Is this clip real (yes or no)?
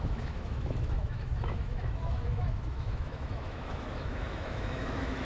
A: no